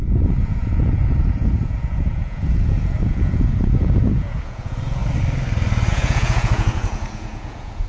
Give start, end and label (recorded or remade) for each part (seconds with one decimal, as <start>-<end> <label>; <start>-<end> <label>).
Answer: 0.0-5.0 remade; 5.0-5.9 recorded; 5.9-7.9 remade